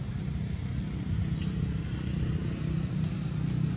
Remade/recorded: recorded